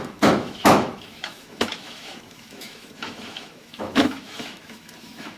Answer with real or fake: fake